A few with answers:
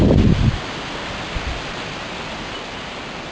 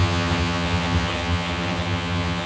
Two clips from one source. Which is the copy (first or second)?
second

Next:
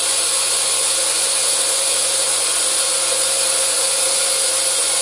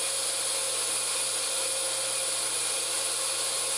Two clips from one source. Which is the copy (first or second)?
first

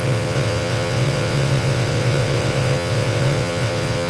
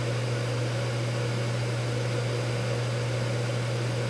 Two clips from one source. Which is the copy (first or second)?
first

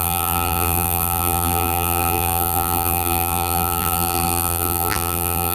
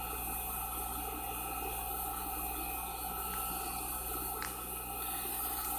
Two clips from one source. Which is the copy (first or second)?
first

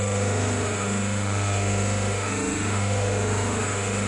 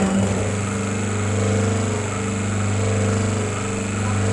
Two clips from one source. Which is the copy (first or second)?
first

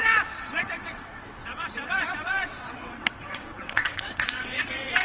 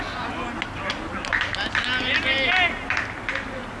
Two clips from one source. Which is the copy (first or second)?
first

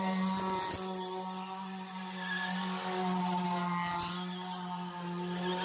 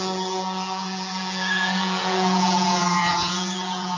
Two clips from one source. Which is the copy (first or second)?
second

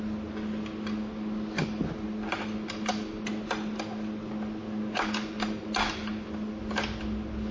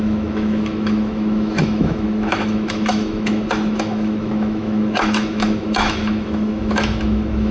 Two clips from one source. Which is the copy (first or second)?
second